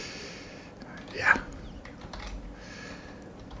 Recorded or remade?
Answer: recorded